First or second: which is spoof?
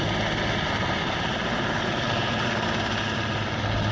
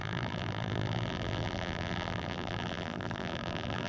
second